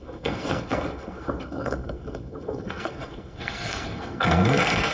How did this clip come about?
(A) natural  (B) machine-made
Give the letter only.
B